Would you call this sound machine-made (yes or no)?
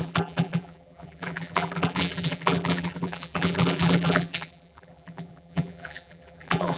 yes